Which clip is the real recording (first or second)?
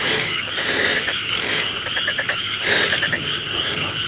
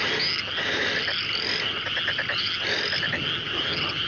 second